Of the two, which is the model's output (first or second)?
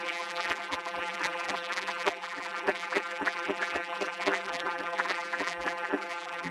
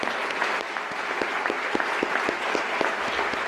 first